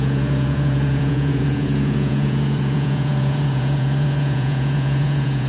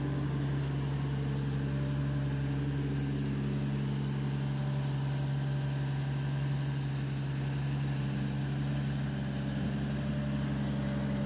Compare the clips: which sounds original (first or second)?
second